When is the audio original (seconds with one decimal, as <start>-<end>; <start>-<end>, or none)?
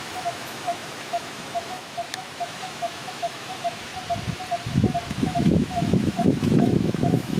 3.9-5.1